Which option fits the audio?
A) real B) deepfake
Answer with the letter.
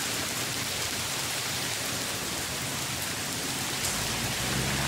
A